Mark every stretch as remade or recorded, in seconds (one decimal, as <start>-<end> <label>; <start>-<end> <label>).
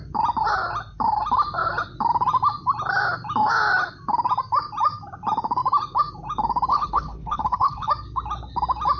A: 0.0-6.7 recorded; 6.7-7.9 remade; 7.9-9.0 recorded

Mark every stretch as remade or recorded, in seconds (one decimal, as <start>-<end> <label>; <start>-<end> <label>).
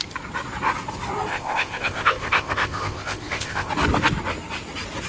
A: 0.0-1.3 recorded; 1.3-3.7 remade; 3.7-5.1 recorded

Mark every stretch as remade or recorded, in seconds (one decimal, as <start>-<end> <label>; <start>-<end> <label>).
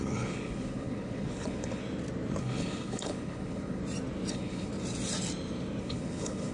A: 0.0-1.8 remade; 1.8-2.4 recorded; 2.4-3.8 remade; 3.8-4.3 recorded; 4.3-4.7 remade; 4.7-5.8 recorded; 5.8-6.5 remade